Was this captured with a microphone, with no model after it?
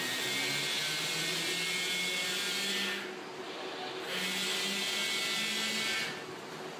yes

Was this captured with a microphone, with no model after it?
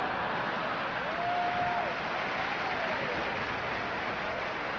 yes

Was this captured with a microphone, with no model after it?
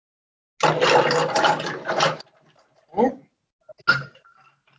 yes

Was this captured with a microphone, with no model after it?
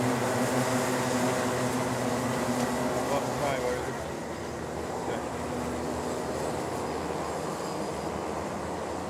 yes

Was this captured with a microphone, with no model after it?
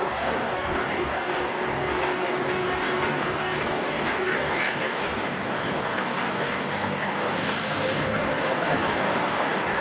no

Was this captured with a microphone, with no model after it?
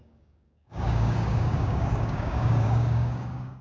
no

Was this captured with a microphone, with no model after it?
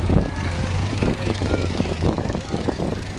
no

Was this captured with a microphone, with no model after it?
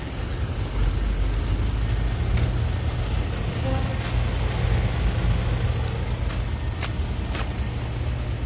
yes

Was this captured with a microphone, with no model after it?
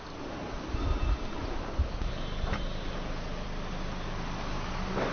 yes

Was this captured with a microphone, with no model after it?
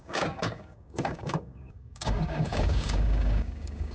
no